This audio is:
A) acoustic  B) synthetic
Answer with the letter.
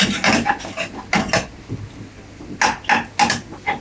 A